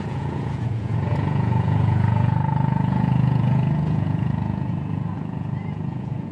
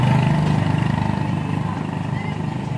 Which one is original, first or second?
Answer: second